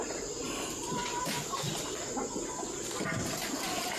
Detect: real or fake real